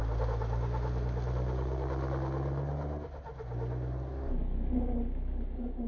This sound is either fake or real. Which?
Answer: real